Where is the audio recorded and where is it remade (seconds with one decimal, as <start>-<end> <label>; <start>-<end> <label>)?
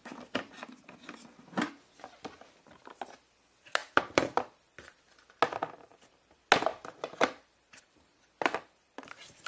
0.0-3.8 recorded; 3.8-5.0 remade; 5.0-6.7 recorded; 6.7-9.5 remade